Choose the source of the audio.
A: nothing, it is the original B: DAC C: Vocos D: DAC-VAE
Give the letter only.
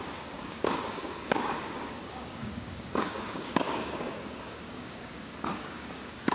B